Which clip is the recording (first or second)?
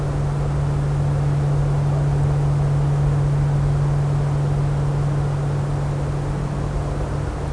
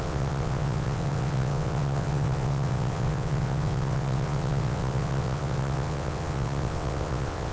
first